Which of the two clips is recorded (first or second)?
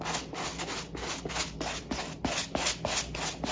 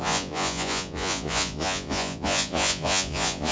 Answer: first